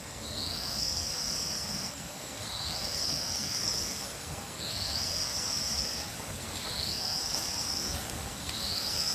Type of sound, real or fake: fake